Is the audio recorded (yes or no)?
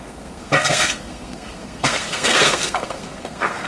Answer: no